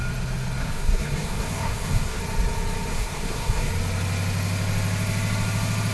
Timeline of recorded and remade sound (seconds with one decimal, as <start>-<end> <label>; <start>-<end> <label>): 0.0-0.6 recorded; 0.6-2.2 remade; 2.2-2.9 recorded; 2.9-3.7 remade; 3.7-5.9 recorded